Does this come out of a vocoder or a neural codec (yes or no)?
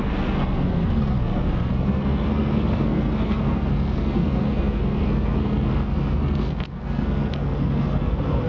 yes